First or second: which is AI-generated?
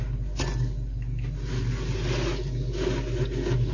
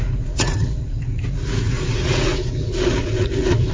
second